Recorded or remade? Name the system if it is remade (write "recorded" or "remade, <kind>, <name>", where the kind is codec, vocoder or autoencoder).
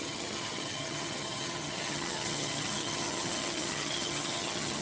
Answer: remade, vocoder, HiFi-GAN